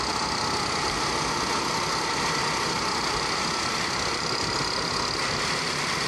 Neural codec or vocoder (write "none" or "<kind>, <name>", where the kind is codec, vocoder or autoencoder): none